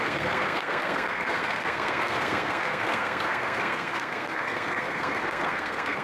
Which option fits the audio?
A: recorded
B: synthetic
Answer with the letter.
B